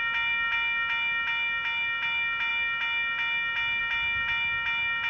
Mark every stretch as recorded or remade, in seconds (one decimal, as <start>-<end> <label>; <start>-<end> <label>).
0.0-5.1 recorded